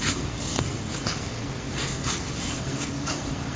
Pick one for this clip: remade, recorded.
remade